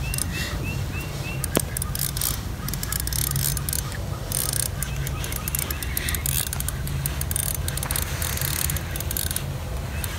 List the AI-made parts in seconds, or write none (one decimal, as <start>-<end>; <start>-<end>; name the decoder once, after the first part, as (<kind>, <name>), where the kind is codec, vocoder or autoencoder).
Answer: none